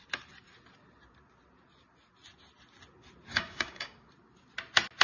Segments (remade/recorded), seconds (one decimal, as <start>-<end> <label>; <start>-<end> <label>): 0.0-3.3 recorded; 3.3-4.1 remade; 4.1-5.0 recorded